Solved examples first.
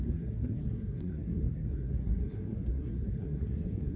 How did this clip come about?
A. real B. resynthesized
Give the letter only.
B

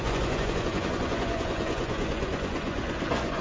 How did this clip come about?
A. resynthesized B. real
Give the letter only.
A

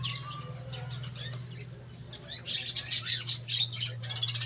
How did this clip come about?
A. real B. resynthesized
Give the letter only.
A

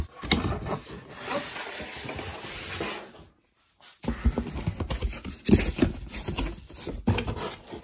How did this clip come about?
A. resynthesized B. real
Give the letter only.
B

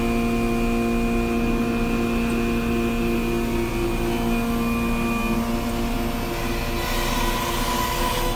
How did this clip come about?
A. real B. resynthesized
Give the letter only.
A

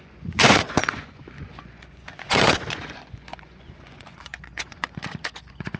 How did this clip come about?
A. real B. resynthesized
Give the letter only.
B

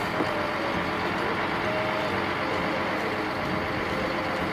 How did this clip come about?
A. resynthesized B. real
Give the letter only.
B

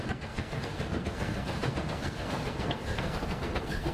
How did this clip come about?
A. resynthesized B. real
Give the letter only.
A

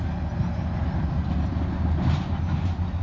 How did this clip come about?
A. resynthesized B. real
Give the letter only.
B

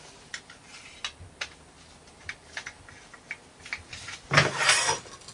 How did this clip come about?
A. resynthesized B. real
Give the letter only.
B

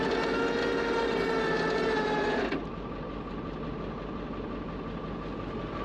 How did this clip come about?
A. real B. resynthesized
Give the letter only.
A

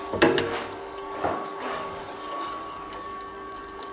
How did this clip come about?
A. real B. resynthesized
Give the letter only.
B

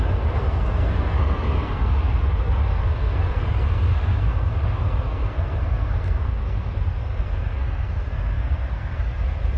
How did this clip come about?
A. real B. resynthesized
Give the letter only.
B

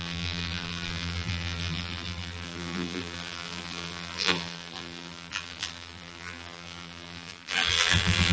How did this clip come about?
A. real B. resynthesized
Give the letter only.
B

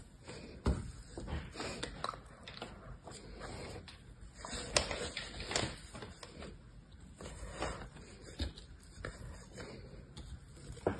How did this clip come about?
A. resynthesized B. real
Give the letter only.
B